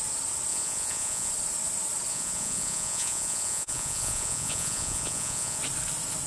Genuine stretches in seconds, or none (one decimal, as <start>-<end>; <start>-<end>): 0.0-0.5; 1.3-2.1; 5.6-6.3